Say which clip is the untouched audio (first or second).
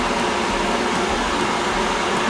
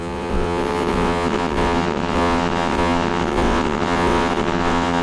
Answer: first